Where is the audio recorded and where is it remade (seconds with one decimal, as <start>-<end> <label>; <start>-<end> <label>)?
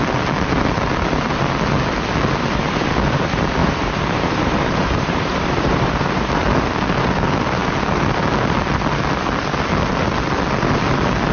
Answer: 0.0-3.6 recorded; 3.6-6.3 remade; 6.3-11.3 recorded